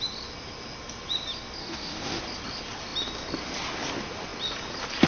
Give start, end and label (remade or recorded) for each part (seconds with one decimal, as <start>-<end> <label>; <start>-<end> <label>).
0.0-1.6 recorded; 1.6-2.2 remade; 2.2-5.1 recorded